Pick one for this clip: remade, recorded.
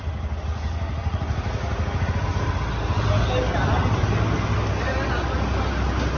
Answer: recorded